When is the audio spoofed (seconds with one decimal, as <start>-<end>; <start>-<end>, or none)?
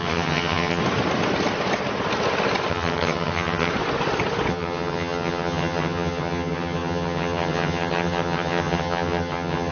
0.0-0.8; 2.7-3.7; 4.5-9.7